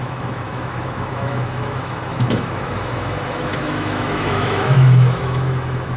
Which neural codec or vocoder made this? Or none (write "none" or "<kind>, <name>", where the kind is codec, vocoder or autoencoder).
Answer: autoencoder, DAC-VAE